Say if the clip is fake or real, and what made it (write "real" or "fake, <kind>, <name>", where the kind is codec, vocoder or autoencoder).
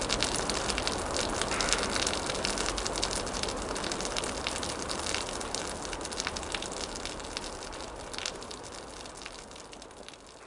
real